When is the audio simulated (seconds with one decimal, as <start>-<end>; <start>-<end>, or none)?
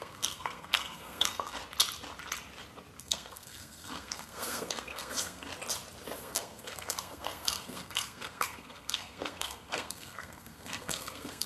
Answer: 0.0-1.6; 3.0-5.5; 6.2-11.5